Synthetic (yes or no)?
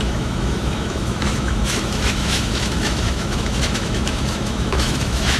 yes